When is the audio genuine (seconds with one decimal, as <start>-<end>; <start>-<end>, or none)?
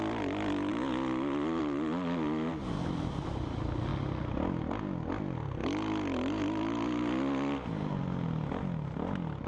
0.0-9.5